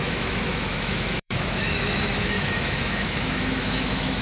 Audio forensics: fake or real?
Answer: fake